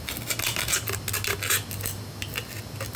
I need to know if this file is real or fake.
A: real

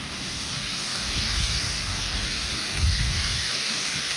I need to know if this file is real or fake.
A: fake